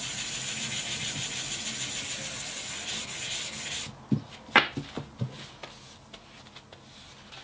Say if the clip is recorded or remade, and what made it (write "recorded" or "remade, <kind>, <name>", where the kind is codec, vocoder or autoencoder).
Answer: recorded